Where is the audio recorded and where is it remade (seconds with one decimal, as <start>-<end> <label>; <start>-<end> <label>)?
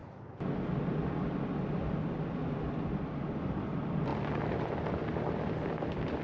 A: 0.0-6.2 recorded